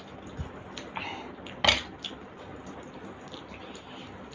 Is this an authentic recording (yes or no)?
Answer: yes